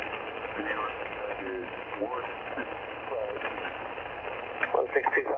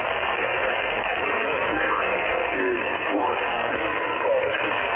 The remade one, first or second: second